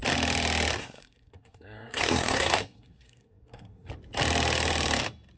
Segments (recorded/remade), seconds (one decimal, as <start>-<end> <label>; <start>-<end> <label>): 0.0-0.8 recorded; 0.8-3.9 remade; 3.9-5.4 recorded